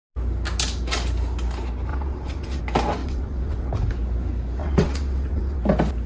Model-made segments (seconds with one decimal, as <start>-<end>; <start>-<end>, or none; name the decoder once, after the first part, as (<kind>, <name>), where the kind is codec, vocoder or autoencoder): 1.9-2.6 (vocoder, WaveNeXt); 3.0-3.7; 4.6-5.6